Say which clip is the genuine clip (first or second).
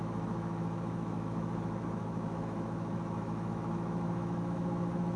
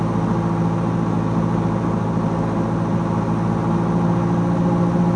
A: second